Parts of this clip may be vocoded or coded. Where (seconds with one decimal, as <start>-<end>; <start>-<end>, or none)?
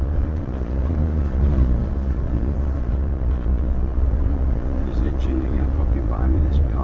0.0-6.8